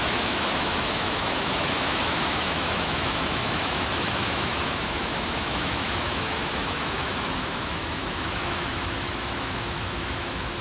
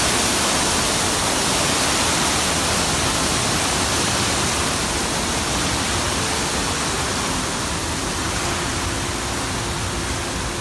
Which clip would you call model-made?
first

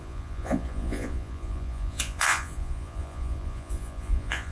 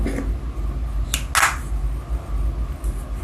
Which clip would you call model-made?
first